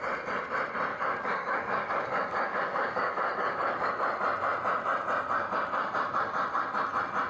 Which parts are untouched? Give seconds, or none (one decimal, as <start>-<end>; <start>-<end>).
0.0-0.9; 3.9-7.3